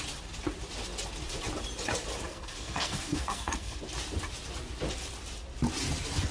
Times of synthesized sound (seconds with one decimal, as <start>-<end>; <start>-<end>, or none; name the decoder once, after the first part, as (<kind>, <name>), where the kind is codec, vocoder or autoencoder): 2.3-3.8 (codec, SNAC)